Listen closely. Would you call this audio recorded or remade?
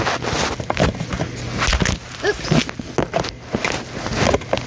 recorded